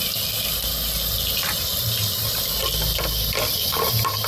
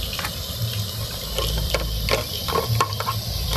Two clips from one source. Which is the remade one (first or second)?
second